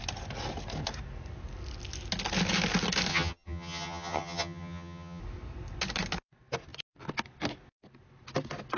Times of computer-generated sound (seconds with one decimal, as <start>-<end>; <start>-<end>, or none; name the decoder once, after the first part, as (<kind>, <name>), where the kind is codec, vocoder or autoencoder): 3.1-5.2 (vocoder, HiFi-GAN)